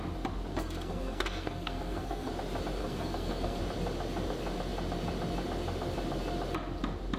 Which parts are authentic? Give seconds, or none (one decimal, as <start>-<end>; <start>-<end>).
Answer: 0.0-0.5; 2.3-2.8; 3.6-7.2